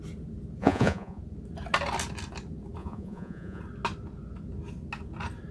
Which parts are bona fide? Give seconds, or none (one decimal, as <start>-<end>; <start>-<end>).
0.0-0.6; 1.2-2.8; 3.6-5.5